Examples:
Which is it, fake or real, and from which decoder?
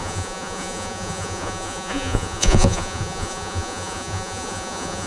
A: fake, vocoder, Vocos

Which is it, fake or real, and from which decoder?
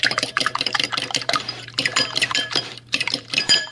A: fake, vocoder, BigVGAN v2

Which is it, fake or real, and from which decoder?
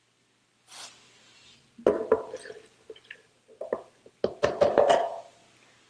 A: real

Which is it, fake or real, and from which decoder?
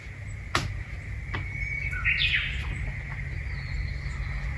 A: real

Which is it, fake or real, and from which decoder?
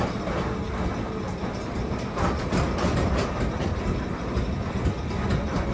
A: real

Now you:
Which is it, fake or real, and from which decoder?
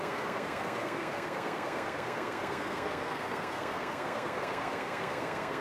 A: fake, codec, SNAC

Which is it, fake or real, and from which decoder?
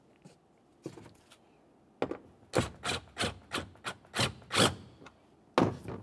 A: real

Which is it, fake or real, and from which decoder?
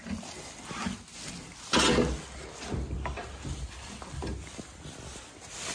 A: real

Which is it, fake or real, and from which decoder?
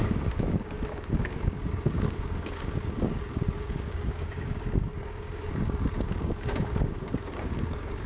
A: fake, codec, DAC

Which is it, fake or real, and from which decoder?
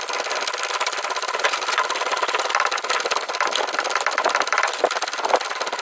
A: real